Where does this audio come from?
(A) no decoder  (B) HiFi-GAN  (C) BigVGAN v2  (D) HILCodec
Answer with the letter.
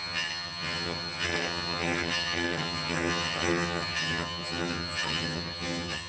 B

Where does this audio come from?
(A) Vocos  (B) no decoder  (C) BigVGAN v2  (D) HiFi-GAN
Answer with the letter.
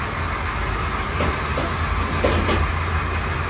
B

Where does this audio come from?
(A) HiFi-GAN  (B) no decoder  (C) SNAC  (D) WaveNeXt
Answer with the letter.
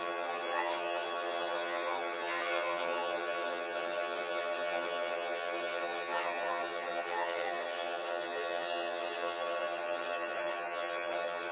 A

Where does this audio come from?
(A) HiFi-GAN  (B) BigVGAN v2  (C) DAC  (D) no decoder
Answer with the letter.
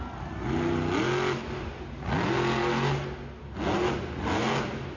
D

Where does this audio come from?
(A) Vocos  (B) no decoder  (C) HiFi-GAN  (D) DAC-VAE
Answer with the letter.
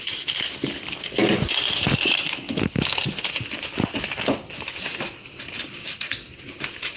B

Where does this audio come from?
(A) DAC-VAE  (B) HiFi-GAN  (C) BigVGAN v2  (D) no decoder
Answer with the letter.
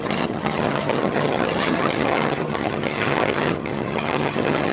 B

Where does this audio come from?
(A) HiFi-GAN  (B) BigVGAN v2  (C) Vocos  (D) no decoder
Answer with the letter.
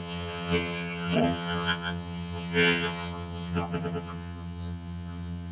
A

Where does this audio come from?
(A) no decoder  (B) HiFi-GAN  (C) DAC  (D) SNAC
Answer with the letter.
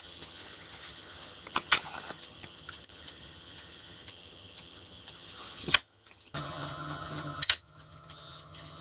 B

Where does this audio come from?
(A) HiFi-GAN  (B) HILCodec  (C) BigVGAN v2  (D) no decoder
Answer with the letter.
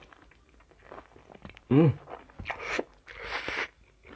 D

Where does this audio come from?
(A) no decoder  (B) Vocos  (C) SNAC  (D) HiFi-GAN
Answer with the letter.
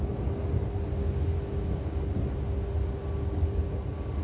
A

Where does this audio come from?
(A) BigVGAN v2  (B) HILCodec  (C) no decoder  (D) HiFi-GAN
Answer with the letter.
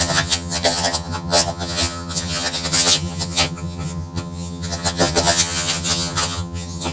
D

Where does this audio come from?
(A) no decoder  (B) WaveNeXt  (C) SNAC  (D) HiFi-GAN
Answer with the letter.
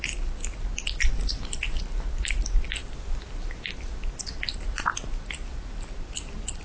A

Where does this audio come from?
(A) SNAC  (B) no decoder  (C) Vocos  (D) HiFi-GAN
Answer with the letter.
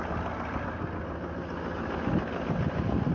B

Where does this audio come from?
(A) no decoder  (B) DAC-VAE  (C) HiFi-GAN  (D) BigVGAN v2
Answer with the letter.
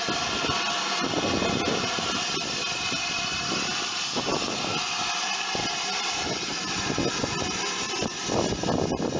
A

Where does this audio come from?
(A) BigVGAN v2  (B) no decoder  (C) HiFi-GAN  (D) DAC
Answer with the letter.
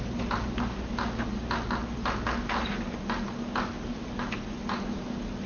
B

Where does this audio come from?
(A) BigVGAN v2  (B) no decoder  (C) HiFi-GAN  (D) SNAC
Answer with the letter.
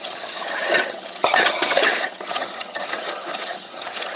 C